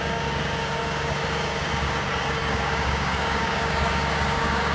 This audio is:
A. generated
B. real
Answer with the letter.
A